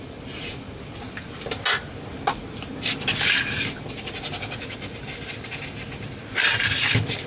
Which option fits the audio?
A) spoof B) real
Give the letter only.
B